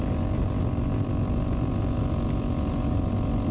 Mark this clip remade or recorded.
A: recorded